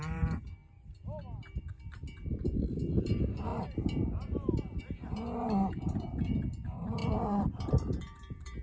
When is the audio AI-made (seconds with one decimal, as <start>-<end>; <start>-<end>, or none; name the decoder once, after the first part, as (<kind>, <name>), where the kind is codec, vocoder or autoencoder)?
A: 0.0-0.6 (vocoder, BigVGAN v2); 3.0-8.6